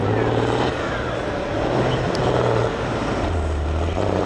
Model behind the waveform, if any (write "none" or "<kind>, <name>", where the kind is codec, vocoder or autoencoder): none